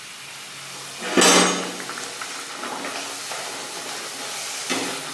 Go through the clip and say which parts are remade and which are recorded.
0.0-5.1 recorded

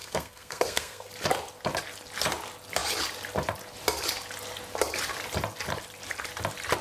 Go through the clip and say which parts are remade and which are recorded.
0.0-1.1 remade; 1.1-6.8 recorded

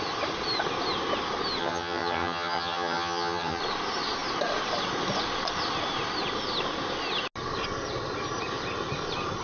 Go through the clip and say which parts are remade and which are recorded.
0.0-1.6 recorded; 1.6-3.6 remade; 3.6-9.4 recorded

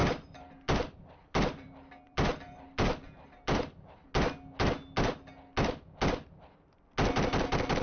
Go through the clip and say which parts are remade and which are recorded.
0.0-4.1 remade; 4.1-7.8 recorded

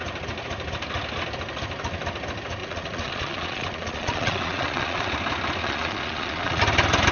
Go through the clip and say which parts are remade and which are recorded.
0.0-2.6 recorded; 2.6-5.1 remade; 5.1-5.6 recorded; 5.6-6.6 remade; 6.6-7.1 recorded